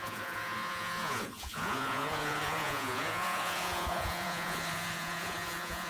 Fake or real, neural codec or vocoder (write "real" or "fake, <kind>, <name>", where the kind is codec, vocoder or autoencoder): fake, vocoder, Vocos